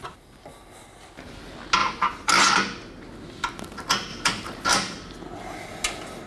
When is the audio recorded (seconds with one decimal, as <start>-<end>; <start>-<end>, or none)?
0.0-1.8; 2.3-4.1; 4.7-6.3